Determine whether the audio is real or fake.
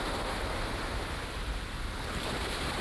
real